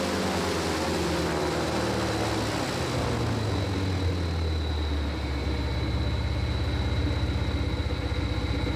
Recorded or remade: recorded